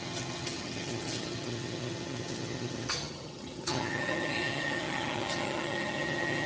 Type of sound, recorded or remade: remade